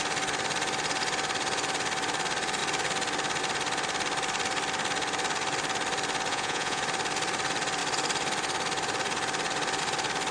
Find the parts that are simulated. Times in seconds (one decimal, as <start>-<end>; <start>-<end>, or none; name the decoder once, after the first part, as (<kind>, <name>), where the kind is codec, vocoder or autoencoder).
6.3-6.8 (vocoder, Vocos)